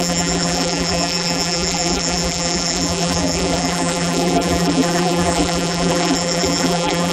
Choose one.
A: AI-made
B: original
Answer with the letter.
A